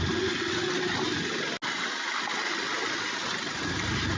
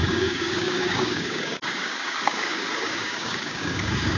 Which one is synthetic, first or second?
second